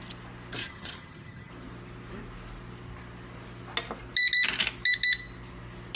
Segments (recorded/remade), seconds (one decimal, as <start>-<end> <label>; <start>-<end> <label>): 0.0-0.6 recorded; 0.6-1.5 remade; 1.5-6.0 recorded